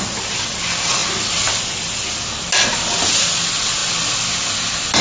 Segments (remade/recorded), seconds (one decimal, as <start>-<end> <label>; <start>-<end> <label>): 0.0-5.0 recorded